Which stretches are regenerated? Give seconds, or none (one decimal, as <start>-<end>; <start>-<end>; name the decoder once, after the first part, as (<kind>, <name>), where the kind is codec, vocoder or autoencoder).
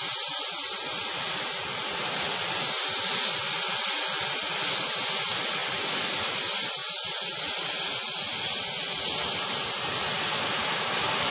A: none